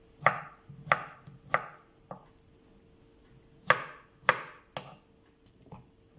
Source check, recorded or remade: recorded